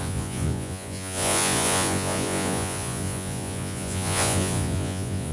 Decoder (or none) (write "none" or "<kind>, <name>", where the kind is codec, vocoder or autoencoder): vocoder, Vocos